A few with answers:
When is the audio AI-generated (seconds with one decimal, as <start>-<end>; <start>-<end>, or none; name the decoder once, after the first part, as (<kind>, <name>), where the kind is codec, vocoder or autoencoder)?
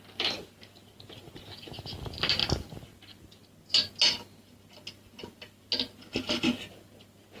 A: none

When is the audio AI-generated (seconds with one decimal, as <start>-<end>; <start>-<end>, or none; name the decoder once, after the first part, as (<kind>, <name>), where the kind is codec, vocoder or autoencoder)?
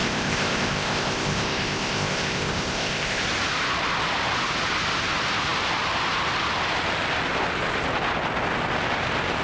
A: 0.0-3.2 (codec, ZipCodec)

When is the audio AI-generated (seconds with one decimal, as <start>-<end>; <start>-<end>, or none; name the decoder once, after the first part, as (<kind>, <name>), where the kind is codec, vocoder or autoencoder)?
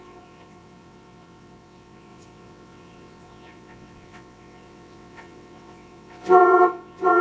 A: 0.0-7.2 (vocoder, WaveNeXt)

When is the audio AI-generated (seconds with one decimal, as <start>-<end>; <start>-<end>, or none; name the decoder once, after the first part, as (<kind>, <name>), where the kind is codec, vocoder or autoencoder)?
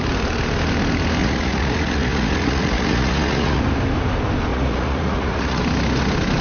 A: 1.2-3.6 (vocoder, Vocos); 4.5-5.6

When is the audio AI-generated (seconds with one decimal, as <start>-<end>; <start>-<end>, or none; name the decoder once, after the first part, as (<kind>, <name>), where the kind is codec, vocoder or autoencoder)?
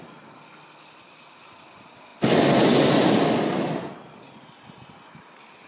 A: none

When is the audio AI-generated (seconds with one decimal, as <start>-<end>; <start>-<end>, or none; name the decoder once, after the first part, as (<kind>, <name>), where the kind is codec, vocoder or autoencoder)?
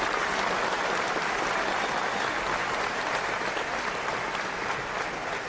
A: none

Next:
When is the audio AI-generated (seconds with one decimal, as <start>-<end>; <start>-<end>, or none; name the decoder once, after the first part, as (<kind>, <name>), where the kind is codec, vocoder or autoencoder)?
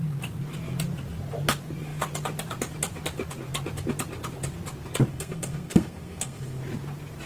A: 5.1-6.6 (codec, SNAC)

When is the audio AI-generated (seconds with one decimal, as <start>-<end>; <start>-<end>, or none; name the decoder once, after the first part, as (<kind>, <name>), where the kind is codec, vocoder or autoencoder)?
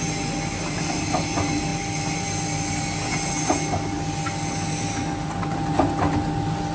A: none